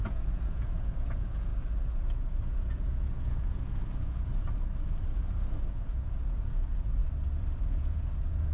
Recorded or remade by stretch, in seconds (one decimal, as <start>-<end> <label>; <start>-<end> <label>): 0.0-1.5 remade; 1.5-2.4 recorded; 2.4-4.3 remade; 4.3-5.7 recorded; 5.7-7.0 remade; 7.0-7.7 recorded; 7.7-8.5 remade